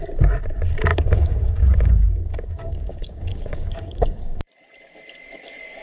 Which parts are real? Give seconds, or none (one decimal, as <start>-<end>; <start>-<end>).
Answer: 0.0-0.9; 4.4-5.8